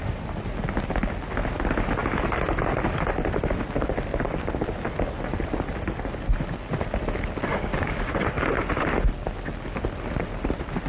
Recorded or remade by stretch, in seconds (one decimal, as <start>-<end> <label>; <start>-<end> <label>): 0.0-7.5 recorded; 7.5-8.1 remade; 8.1-10.9 recorded